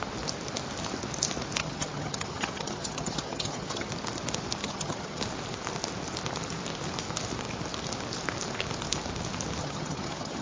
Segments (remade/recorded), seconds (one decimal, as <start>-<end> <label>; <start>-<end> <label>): 0.0-1.6 recorded; 1.6-3.9 remade; 3.9-4.6 recorded; 4.6-5.2 remade; 5.2-9.6 recorded; 9.6-10.4 remade